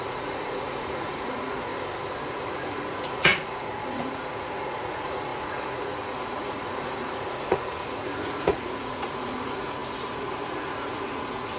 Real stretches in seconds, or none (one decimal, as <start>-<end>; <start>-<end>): 1.7-2.3